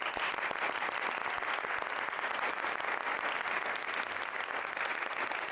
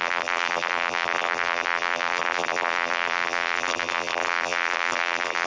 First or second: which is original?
first